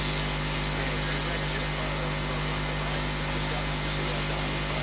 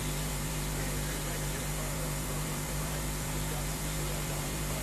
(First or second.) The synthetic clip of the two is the second